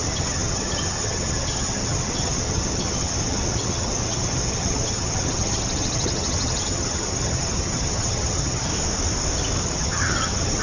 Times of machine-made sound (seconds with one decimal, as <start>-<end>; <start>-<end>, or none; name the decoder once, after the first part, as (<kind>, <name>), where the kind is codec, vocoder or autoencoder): 0.0-8.7 (vocoder, HiFi-GAN); 9.6-10.6